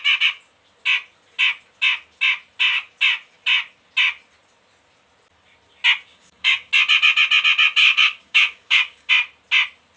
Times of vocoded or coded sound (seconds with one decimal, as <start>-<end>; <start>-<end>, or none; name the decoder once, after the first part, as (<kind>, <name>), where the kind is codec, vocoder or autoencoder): 6.1-6.7 (codec, DAC); 7.8-9.1